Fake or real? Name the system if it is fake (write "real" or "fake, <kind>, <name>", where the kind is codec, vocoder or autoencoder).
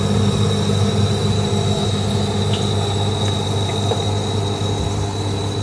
real